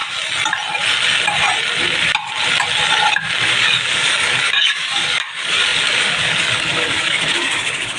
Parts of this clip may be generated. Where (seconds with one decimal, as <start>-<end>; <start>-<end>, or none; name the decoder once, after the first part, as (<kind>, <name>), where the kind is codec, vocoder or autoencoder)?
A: 3.5-8.0 (codec, DAC)